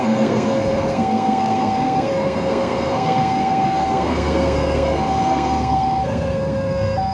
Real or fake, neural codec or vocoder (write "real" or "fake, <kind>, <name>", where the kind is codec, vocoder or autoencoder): fake, codec, SNAC